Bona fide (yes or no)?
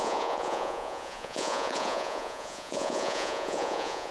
no